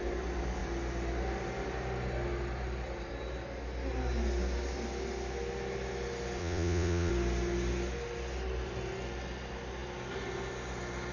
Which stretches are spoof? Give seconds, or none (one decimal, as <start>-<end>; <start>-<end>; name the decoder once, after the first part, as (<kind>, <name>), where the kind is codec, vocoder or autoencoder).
6.4-7.1 (vocoder, Vocos)